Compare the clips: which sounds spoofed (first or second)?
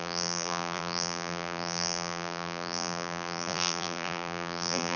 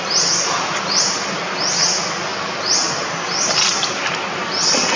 first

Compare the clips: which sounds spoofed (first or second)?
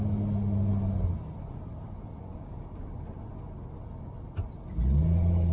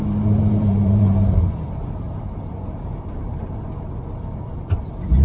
second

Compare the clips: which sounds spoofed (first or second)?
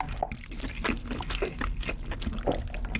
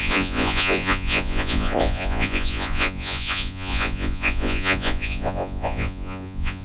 second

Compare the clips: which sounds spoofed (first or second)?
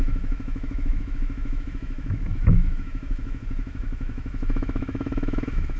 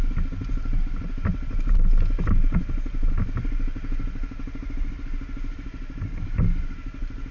first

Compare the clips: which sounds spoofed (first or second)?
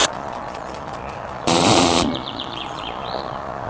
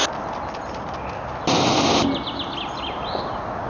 first